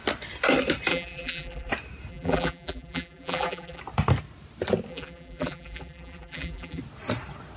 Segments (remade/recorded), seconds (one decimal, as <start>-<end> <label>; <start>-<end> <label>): 0.0-0.9 recorded; 0.9-1.7 remade; 1.7-2.1 recorded; 2.1-3.8 remade; 3.8-4.9 recorded; 4.9-6.8 remade; 6.8-7.6 recorded